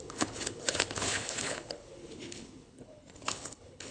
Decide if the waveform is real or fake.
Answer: fake